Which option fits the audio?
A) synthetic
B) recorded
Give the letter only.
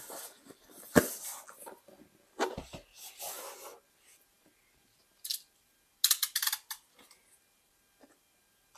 B